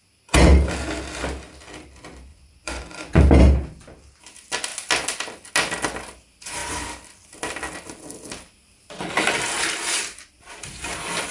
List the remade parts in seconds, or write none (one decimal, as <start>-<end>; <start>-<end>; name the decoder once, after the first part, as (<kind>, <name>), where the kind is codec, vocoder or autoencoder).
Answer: 2.3-3.2 (vocoder, Vocos)